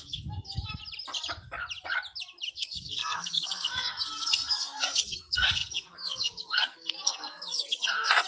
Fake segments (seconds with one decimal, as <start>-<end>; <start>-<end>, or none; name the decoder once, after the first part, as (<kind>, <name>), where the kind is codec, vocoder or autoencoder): 0.0-0.8 (codec, SNAC); 2.5-8.3